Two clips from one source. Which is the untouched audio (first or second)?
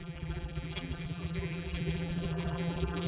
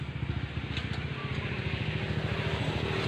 second